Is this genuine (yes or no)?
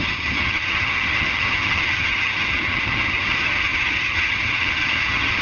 no